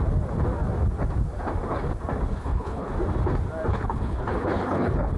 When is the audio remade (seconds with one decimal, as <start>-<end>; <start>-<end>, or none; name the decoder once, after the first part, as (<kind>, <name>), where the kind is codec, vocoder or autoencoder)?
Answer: 2.3-2.9 (codec, HILCodec); 3.7-5.2